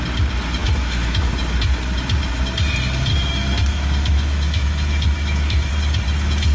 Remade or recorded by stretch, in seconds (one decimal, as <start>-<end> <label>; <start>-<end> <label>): 0.0-0.6 recorded; 0.6-1.3 remade; 1.3-3.1 recorded; 3.1-5.7 remade; 5.7-6.5 recorded